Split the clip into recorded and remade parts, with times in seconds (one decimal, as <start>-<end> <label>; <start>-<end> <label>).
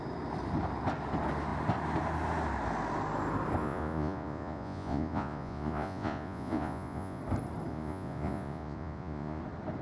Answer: 0.0-3.6 recorded; 3.6-7.2 remade; 7.2-7.7 recorded; 7.7-9.4 remade; 9.4-9.8 recorded